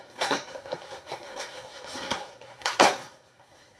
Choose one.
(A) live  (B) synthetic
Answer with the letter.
B